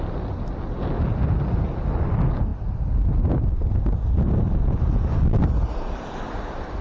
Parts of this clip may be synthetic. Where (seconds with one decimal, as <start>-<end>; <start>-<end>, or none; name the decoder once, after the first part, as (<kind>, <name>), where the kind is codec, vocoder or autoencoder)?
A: none